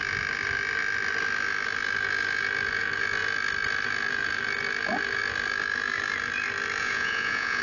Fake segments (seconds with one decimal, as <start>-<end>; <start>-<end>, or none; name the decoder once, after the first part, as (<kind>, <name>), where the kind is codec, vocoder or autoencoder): 6.8-7.6 (vocoder, Vocos)